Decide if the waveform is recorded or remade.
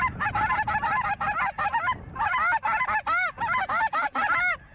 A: recorded